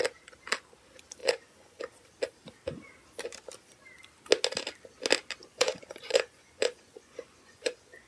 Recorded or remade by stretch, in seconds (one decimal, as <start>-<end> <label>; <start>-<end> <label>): 0.0-1.2 recorded; 1.2-1.8 remade; 1.8-5.4 recorded; 5.4-8.1 remade